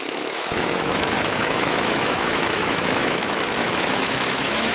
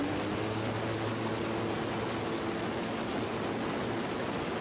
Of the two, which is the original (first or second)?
second